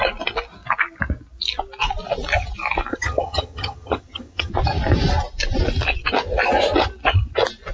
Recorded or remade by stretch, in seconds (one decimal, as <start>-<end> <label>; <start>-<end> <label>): 0.0-2.9 recorded; 2.9-4.5 remade; 4.5-7.7 recorded